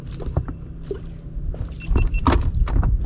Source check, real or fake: real